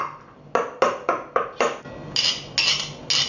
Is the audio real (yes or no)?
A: yes